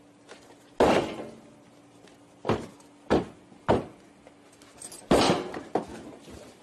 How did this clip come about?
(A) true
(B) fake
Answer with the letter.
A